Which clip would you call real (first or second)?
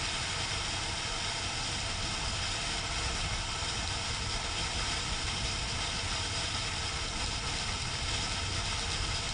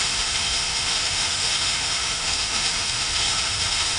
first